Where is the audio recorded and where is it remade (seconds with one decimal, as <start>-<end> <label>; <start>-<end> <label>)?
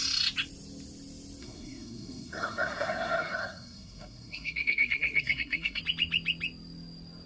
0.0-1.4 recorded; 1.4-5.8 remade; 5.8-7.3 recorded